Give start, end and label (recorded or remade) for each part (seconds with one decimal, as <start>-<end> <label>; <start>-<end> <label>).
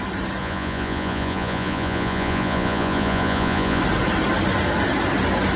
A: 0.0-0.4 recorded; 0.4-3.8 remade; 3.8-5.6 recorded